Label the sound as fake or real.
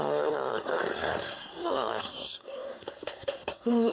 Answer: fake